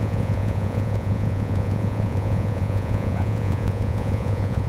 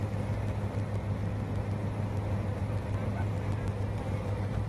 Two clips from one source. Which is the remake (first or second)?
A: first